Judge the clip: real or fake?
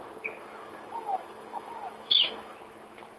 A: fake